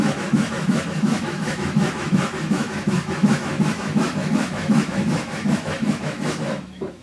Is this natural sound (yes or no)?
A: no